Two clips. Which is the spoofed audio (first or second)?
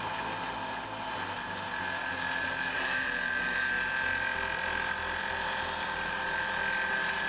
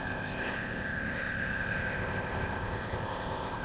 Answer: second